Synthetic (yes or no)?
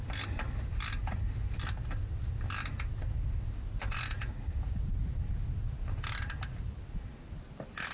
no